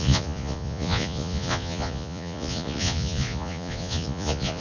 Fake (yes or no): yes